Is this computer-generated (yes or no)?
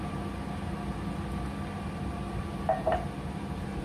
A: no